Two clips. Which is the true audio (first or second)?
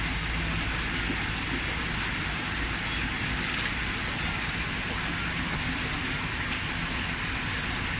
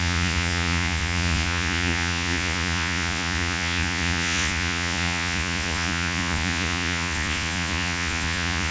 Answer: first